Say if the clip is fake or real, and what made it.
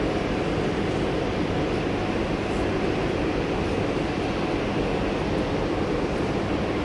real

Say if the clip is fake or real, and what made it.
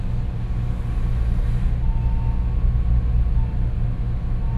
real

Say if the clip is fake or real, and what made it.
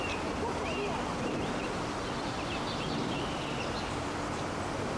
fake, vocoder, BigVGAN v2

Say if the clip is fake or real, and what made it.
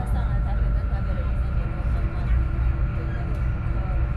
real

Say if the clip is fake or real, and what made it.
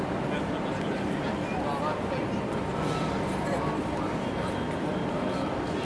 real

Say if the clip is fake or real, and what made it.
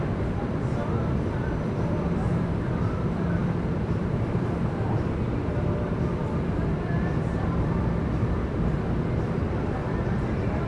fake, vocoder, BigVGAN v2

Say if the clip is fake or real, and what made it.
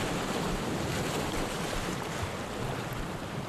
real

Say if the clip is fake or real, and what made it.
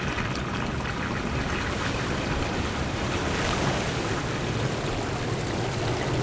real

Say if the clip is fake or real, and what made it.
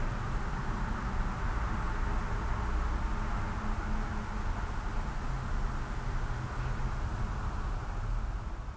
real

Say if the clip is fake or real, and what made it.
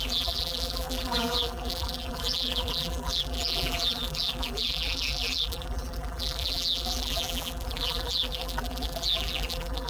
fake, vocoder, BigVGAN v2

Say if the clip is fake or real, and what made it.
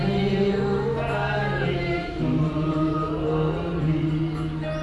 real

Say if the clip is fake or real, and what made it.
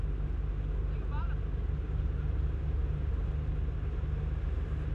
real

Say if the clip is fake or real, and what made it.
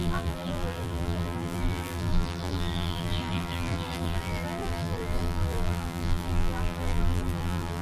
fake, vocoder, BigVGAN v2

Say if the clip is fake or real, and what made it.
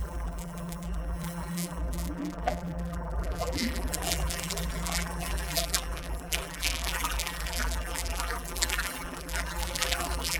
fake, vocoder, BigVGAN v2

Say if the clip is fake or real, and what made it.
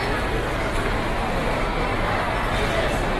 fake, vocoder, BigVGAN v2